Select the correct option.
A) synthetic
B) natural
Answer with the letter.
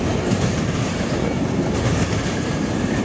A